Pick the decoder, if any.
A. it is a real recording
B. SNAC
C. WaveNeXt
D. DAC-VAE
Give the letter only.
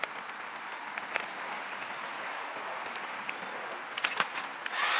A